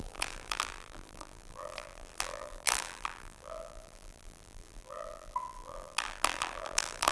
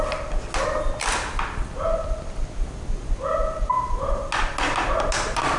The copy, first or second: first